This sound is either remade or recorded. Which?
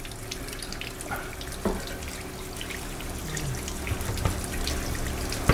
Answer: recorded